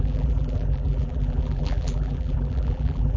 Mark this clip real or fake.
fake